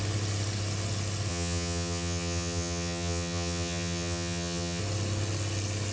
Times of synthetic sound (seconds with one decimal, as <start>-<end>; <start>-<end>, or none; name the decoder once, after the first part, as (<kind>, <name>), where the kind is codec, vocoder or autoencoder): 1.3-4.8 (vocoder, HiFi-GAN)